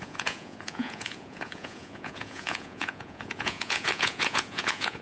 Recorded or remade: remade